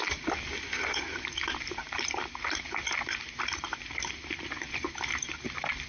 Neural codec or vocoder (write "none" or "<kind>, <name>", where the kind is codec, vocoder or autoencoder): none